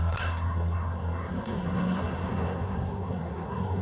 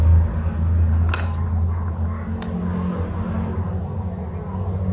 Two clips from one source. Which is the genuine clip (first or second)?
second